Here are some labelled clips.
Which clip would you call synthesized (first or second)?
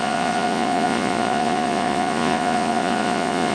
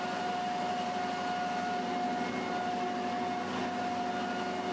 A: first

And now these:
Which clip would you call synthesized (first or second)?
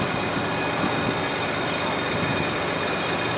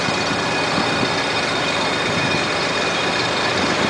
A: second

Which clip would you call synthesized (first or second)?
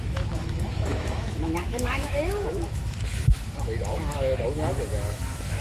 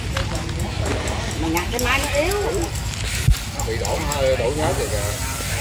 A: first